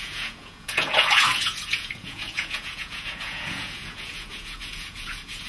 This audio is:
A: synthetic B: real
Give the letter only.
A